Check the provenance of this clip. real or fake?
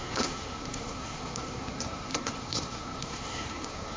fake